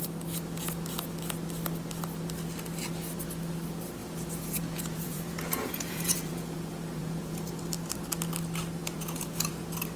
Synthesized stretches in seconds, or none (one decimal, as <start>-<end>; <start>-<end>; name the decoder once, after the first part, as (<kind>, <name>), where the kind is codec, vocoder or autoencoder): 4.0-7.5 (vocoder, Vocos); 8.8-9.5